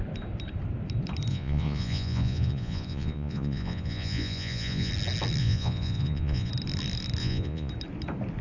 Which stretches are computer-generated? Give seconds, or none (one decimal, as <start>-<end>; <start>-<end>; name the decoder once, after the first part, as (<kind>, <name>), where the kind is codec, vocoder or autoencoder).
1.3-4.9 (vocoder, Vocos); 5.4-6.5; 7.2-7.7